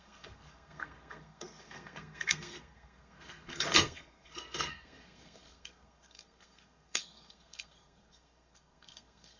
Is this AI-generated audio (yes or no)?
yes